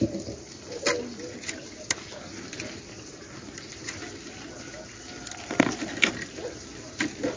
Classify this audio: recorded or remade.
recorded